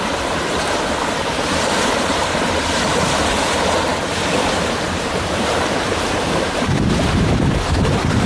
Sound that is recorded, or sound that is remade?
remade